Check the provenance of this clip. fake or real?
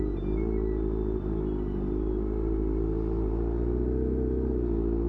real